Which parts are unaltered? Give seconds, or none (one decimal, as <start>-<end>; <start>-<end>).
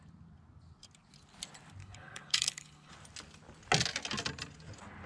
0.0-1.8; 2.9-5.1